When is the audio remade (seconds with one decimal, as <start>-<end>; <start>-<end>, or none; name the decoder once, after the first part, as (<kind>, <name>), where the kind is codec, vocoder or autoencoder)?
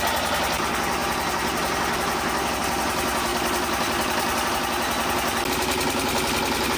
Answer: 3.3-4.5 (vocoder, BigVGAN v2)